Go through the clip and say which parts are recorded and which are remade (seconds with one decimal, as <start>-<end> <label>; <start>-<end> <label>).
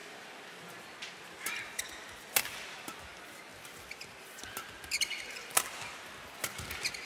0.0-7.1 recorded